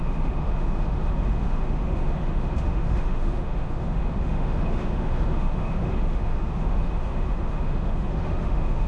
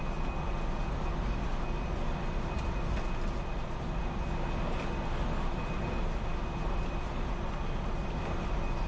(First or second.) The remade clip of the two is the first